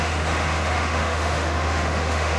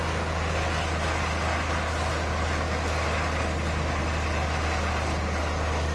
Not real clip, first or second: first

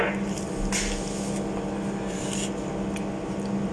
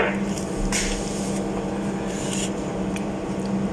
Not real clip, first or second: second